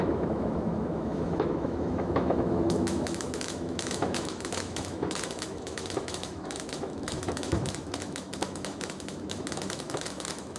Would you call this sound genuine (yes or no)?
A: no